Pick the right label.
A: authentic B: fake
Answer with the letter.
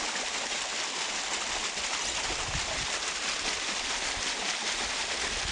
A